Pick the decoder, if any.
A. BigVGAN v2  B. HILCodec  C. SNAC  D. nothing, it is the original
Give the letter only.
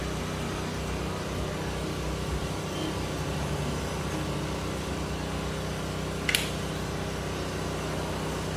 D